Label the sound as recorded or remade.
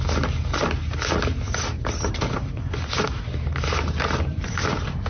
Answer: recorded